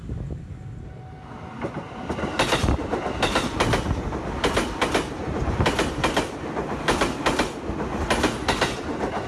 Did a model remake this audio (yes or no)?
no